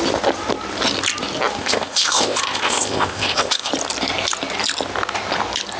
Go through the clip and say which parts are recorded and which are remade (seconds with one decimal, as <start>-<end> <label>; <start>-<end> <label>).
0.0-1.6 recorded; 1.6-3.7 remade; 3.7-5.8 recorded